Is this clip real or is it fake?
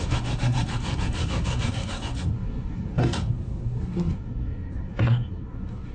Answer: fake